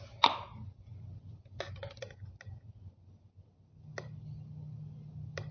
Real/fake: real